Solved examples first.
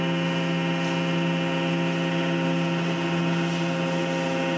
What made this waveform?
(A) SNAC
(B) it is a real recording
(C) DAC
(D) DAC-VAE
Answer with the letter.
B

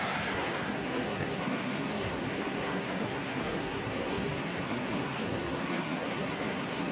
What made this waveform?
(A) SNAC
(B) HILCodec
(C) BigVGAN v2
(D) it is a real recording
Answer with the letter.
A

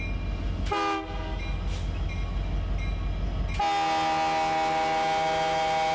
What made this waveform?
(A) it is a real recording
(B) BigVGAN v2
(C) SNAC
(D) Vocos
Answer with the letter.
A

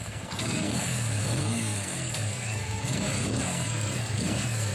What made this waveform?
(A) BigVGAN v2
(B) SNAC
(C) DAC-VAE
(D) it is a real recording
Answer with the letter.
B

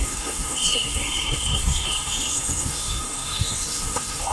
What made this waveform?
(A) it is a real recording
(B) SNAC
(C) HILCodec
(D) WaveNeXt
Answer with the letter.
B